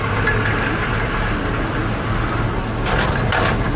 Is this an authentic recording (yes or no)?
yes